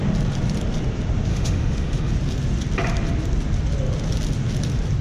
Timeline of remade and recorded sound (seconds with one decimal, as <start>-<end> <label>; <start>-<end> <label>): 0.0-1.3 recorded; 1.3-2.1 remade; 2.1-5.0 recorded